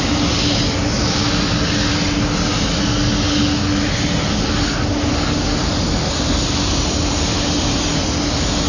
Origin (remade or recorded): recorded